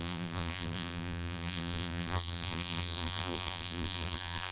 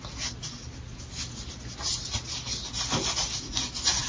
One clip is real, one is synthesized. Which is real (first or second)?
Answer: second